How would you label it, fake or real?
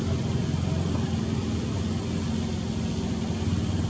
real